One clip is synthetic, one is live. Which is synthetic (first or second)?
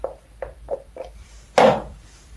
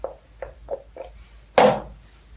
first